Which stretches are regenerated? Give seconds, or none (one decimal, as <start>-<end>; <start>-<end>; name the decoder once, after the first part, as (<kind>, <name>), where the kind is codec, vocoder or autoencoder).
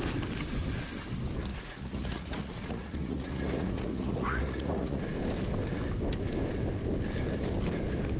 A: 1.5-5.0 (vocoder, Vocos)